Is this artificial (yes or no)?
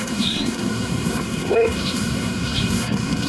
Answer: yes